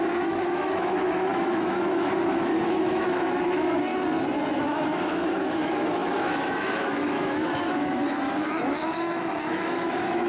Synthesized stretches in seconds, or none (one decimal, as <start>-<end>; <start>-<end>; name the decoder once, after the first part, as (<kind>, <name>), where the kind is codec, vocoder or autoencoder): 0.0-3.9 (autoencoder, DAC-VAE); 4.6-10.3